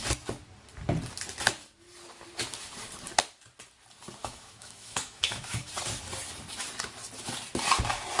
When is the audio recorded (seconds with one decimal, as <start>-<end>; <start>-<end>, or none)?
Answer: 0.0-4.2; 5.7-8.2